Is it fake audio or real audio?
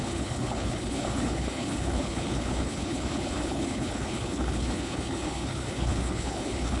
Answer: fake